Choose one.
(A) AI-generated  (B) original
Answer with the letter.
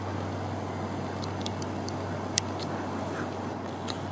B